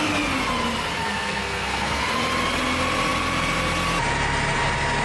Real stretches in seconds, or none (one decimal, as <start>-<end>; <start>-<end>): 0.0-1.0; 2.0-5.0